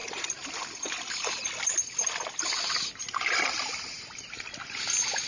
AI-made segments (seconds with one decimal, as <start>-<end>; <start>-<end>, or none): 0.0-2.4